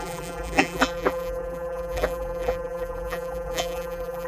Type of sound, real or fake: fake